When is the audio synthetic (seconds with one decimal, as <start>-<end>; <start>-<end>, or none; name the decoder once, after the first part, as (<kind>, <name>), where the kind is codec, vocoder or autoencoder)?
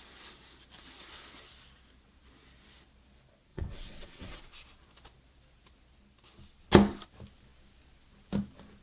3.5-4.4 (vocoder, WaveNeXt)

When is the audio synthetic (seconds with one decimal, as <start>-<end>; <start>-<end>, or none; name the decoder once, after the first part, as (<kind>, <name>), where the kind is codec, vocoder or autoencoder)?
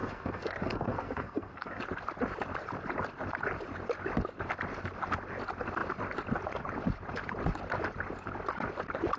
0.0-1.8 (codec, SNAC)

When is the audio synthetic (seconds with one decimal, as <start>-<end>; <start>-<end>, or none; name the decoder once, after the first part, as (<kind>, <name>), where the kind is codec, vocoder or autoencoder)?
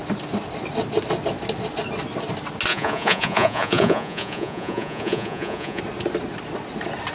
2.7-5.8 (vocoder, Vocos)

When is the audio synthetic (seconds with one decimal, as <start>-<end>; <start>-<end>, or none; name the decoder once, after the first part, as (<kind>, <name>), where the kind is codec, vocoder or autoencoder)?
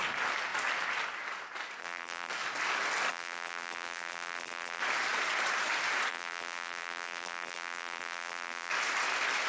1.8-2.3 (vocoder, BigVGAN v2); 3.1-4.8; 6.1-8.7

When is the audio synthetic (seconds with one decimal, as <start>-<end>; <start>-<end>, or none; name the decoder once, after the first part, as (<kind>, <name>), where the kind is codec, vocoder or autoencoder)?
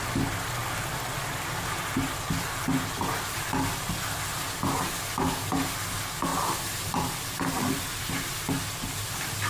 4.3-5.0 (vocoder, BigVGAN v2); 6.3-8.1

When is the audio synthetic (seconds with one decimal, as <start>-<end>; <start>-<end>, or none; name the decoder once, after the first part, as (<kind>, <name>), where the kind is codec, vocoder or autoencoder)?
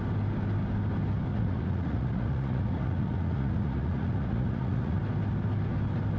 1.3-5.0 (vocoder, Vocos)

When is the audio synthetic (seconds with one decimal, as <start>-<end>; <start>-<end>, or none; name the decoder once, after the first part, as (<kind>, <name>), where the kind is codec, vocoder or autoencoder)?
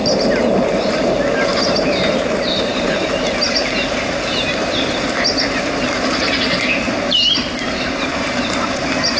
2.2-9.2 (vocoder, BigVGAN v2)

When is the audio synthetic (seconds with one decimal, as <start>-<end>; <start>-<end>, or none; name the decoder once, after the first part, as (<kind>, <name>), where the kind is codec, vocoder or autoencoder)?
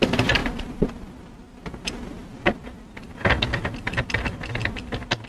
none